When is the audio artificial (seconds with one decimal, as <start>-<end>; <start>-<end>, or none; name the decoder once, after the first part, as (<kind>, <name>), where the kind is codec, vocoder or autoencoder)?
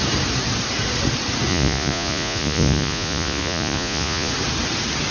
1.5-4.3 (vocoder, Vocos)